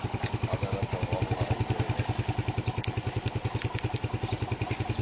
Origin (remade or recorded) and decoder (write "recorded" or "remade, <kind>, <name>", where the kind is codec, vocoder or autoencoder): recorded